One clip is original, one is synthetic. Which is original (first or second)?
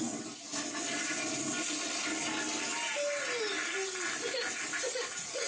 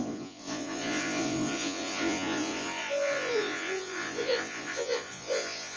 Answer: first